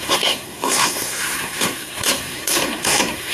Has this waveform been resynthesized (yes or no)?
yes